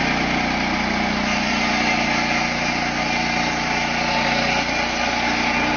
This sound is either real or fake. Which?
real